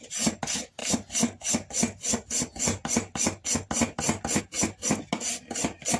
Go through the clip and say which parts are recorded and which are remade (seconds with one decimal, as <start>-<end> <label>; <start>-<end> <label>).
0.0-6.0 recorded